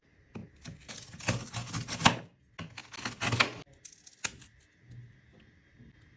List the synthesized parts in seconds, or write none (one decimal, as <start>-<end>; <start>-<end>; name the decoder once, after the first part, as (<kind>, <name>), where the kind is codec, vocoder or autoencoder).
none